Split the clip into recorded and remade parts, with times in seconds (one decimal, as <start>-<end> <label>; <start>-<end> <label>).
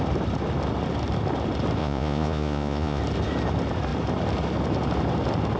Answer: 0.0-1.8 recorded; 1.8-3.0 remade; 3.0-5.6 recorded